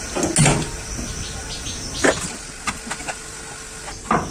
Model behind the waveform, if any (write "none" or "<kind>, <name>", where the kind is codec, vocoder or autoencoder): none